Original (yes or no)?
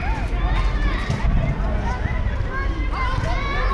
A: yes